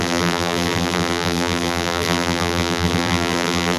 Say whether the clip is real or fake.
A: fake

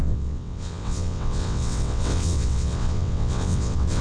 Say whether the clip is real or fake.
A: fake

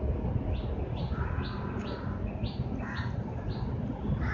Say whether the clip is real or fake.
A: real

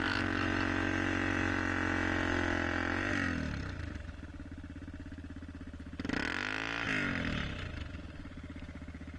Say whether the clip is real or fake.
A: real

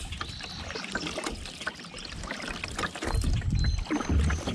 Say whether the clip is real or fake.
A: real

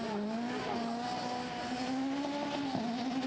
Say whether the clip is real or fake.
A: real